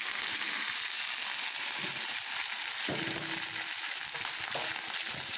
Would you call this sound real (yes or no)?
yes